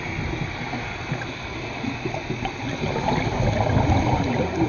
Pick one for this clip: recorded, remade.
recorded